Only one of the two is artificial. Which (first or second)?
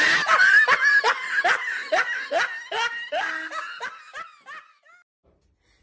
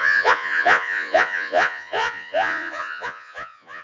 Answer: second